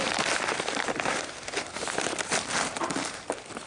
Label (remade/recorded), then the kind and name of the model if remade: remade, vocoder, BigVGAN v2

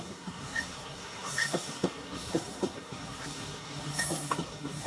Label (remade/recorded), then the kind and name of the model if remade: remade, codec, SNAC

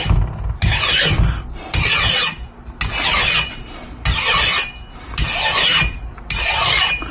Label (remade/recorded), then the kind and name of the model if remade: recorded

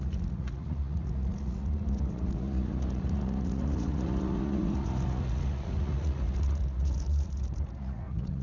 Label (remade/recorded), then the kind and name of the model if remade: remade, vocoder, Vocos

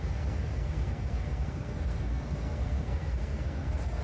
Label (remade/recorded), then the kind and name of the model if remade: remade, codec, SNAC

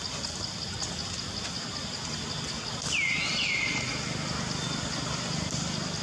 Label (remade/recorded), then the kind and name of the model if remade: recorded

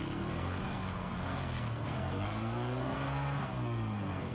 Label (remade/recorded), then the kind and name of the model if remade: remade, codec, SNAC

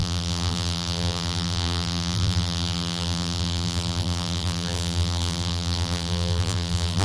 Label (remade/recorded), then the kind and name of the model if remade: remade, vocoder, BigVGAN v2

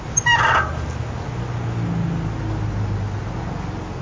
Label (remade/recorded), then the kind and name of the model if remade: recorded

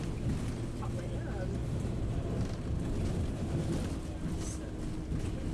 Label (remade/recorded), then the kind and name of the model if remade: recorded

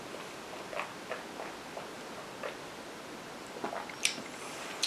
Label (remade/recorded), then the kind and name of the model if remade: recorded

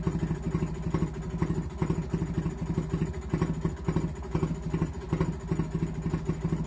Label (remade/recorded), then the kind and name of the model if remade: recorded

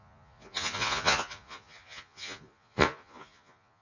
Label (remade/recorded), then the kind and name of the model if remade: remade, vocoder, Vocos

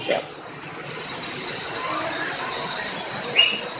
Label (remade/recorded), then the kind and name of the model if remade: recorded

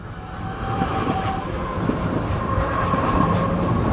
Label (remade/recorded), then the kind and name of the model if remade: remade, vocoder, BigVGAN v2